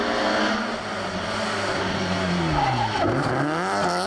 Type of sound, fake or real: real